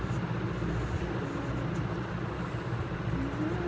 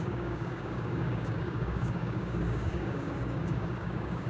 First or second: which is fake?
second